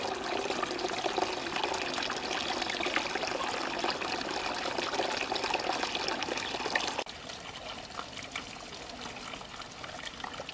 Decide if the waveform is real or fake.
real